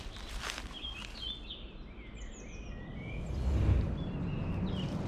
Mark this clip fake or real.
real